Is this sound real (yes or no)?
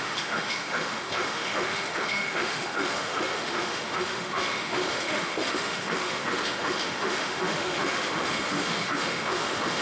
no